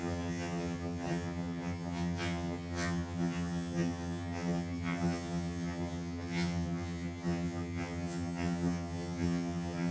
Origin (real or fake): fake